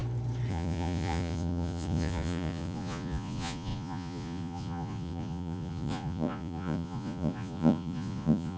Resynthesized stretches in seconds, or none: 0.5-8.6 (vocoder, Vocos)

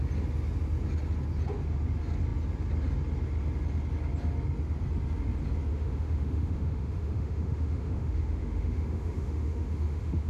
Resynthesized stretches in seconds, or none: 5.7-10.3 (autoencoder, DAC-VAE)

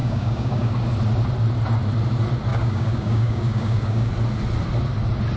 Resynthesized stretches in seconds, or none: 0.0-0.7 (codec, DAC); 2.5-4.1

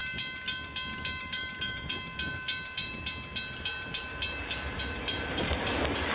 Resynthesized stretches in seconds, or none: 1.2-1.9 (vocoder, BigVGAN v2); 4.4-6.1

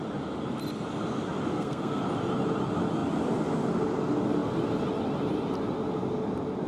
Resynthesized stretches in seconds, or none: 1.5-2.0 (codec, SNAC)